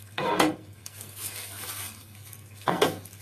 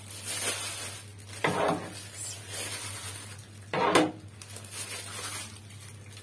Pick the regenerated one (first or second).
first